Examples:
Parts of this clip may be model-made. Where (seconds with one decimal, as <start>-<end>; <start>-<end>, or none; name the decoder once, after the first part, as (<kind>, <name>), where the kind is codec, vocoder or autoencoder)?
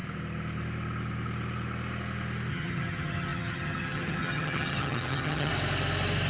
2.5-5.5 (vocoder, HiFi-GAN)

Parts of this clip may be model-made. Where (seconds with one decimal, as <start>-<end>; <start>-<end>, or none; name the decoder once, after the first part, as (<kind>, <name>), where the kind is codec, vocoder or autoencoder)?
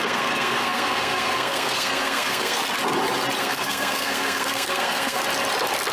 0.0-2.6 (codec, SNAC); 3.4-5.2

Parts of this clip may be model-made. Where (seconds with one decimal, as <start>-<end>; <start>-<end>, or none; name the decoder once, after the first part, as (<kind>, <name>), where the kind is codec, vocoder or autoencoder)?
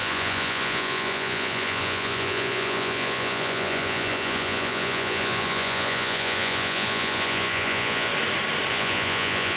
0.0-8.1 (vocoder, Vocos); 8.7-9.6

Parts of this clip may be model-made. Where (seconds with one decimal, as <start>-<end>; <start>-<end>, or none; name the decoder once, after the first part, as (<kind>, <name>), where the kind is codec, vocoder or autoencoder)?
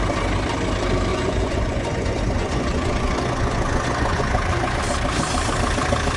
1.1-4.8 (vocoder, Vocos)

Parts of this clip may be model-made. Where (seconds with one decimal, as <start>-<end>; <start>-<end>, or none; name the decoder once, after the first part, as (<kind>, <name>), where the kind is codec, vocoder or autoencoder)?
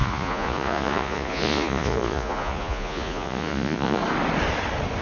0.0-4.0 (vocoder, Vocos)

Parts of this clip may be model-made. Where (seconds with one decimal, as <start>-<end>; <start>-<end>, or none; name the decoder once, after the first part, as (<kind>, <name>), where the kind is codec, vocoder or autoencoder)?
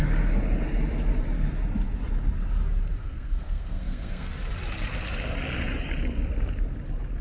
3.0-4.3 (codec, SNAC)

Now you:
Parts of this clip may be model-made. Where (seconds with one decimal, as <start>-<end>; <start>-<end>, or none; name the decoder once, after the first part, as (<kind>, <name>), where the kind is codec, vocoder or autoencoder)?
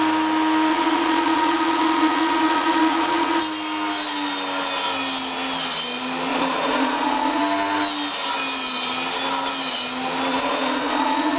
0.7-3.4 (vocoder, Vocos); 6.3-7.4; 10.3-11.4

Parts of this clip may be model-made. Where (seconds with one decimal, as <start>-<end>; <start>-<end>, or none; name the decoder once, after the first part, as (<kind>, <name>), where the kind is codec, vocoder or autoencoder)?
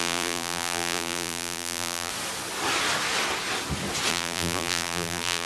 0.0-2.1 (vocoder, BigVGAN v2); 4.1-5.5